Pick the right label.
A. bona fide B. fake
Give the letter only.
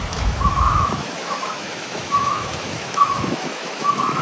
B